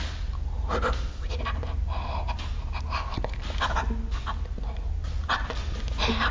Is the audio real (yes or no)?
yes